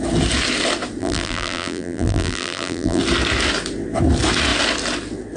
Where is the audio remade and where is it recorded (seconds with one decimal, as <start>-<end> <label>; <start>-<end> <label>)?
0.0-1.0 recorded; 1.0-3.0 remade; 3.0-5.4 recorded